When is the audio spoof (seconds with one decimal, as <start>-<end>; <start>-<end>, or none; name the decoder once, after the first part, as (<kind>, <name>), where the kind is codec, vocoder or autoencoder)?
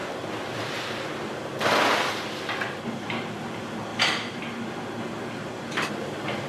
3.9-4.4 (vocoder, BigVGAN v2)